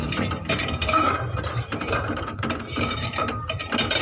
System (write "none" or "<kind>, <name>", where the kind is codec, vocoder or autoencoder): vocoder, BigVGAN v2